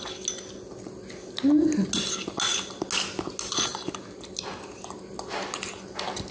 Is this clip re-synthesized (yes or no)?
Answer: no